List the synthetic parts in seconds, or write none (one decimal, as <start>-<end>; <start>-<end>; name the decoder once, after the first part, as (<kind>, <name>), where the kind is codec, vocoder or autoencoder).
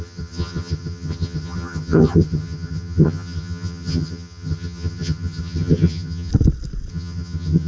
0.0-6.3 (vocoder, HiFi-GAN); 6.9-7.7